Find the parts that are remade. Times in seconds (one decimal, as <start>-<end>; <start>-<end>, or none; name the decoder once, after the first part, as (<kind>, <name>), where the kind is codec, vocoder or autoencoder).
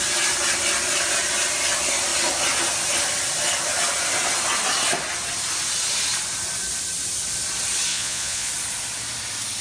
7.9-8.5 (vocoder, Vocos)